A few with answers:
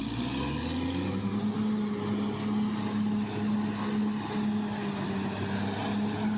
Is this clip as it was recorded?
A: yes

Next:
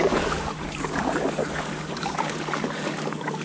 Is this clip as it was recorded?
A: no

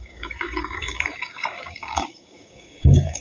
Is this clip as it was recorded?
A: no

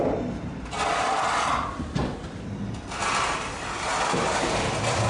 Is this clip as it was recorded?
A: yes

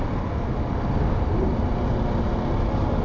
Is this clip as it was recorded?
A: yes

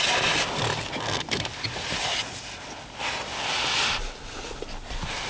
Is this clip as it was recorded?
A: yes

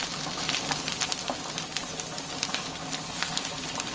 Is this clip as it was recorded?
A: yes